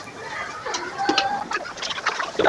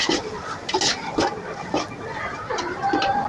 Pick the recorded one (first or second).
second